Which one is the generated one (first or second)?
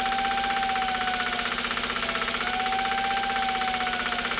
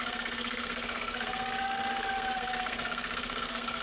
second